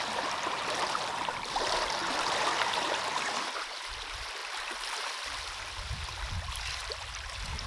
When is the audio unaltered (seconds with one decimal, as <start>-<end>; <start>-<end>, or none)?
2.0-3.9; 4.4-5.1